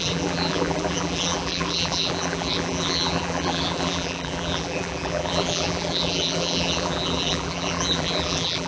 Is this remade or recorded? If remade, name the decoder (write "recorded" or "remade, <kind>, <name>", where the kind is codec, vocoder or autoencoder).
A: remade, vocoder, BigVGAN v2